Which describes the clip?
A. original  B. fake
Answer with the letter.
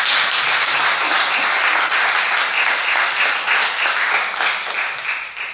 A